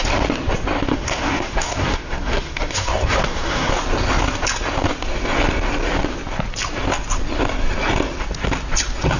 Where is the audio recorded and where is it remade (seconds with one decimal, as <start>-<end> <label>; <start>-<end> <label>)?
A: 0.0-0.9 recorded; 0.9-3.7 remade; 3.7-9.2 recorded